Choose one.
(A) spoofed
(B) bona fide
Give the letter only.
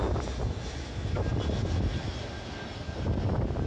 B